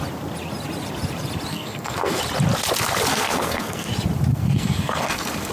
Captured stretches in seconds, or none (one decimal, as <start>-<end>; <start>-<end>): 0.0-1.5; 2.2-3.1; 3.9-4.3